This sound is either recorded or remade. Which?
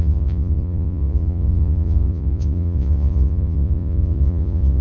remade